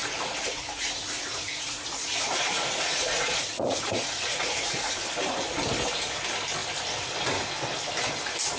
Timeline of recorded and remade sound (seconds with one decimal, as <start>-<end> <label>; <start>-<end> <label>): 0.0-4.9 remade; 4.9-8.6 recorded